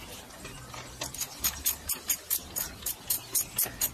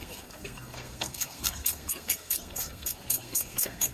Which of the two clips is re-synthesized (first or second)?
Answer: second